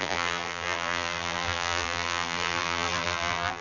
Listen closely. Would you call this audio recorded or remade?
remade